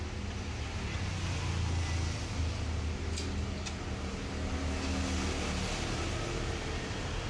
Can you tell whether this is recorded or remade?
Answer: recorded